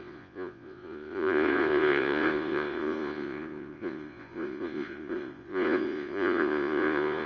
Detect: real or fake fake